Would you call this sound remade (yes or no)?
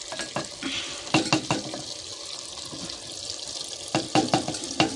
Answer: no